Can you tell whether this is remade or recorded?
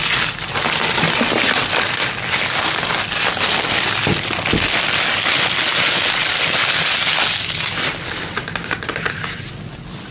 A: recorded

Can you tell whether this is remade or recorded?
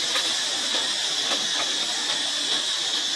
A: recorded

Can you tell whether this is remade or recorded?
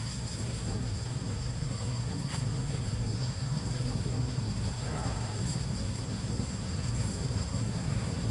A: remade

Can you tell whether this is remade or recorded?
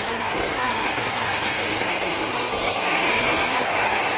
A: remade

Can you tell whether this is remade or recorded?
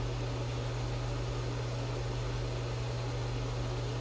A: recorded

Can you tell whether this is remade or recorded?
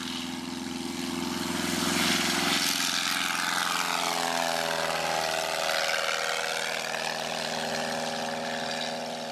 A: recorded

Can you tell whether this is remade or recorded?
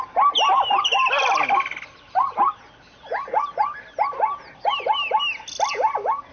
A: recorded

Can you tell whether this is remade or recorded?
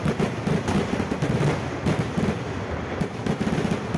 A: recorded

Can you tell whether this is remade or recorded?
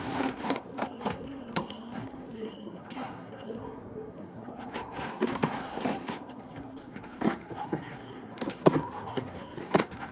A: remade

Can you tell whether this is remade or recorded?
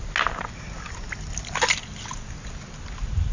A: recorded